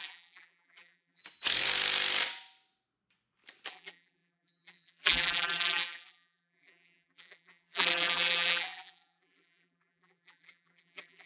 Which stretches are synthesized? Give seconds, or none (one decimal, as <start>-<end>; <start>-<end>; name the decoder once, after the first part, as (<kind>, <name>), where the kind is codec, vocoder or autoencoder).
0.0-1.2 (vocoder, BigVGAN v2); 3.7-11.3

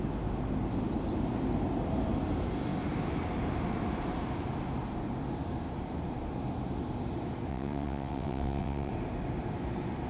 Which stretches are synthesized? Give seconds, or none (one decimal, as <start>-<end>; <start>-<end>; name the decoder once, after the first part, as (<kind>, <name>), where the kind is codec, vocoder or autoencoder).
7.5-8.9 (vocoder, WaveNeXt)

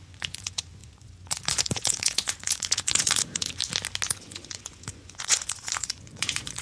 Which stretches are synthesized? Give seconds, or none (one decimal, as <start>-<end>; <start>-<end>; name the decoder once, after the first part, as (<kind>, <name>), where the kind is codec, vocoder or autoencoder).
0.0-3.6 (vocoder, Vocos); 4.1-6.6

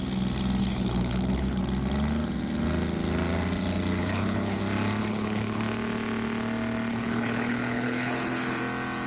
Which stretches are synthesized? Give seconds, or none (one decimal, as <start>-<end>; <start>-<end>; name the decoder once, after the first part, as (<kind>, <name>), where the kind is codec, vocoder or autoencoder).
0.6-1.6 (codec, HILCodec); 4.0-4.6; 5.0-5.6; 6.9-8.6

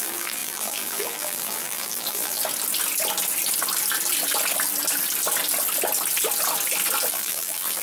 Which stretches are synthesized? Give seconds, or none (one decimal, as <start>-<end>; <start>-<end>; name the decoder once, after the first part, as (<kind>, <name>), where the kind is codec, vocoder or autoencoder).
0.0-2.4 (vocoder, BigVGAN v2); 7.1-7.8

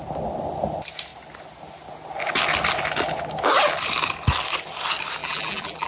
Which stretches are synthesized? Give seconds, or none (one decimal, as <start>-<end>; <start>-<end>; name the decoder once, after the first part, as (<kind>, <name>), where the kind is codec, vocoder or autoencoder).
5.2-5.9 (vocoder, BigVGAN v2)